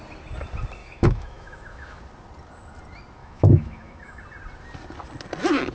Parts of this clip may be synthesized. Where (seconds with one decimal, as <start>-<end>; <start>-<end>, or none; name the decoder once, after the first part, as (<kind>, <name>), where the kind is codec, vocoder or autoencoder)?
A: 0.8-2.0 (autoencoder, DAC-VAE); 3.2-4.2